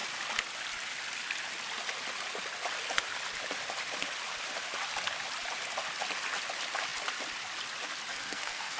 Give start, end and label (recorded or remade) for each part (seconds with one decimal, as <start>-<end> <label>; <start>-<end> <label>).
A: 0.0-8.1 recorded; 8.1-8.8 remade

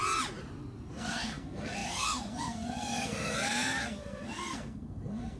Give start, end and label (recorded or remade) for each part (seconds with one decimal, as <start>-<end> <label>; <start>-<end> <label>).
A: 0.0-0.9 recorded; 0.9-5.4 remade

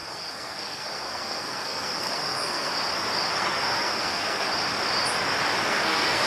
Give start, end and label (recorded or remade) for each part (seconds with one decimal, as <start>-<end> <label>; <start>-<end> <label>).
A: 0.0-2.7 remade; 2.7-3.3 recorded; 3.3-4.5 remade; 4.5-5.6 recorded; 5.6-6.3 remade

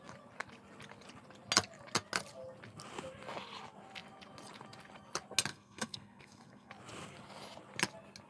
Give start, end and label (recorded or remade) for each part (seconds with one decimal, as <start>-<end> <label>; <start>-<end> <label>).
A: 0.0-5.5 recorded; 5.5-6.7 remade; 6.7-8.3 recorded